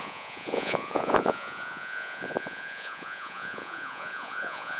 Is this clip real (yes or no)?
no